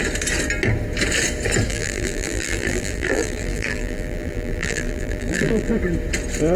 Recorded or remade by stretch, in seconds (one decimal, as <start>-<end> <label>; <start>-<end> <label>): 0.0-1.7 recorded; 1.7-5.7 remade; 5.7-6.6 recorded